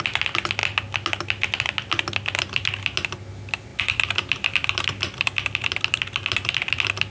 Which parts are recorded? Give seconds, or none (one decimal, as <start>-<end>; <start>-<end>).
0.0-3.7; 5.8-7.1

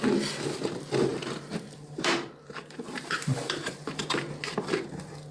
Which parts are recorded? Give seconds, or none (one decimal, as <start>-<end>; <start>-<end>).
0.0-1.1; 4.0-5.3

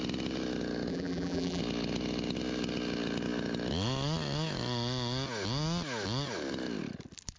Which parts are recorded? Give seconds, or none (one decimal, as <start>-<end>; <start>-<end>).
0.0-0.9; 1.6-7.4

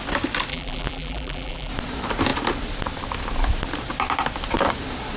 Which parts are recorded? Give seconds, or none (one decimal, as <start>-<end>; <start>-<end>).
0.0-0.5; 1.7-5.2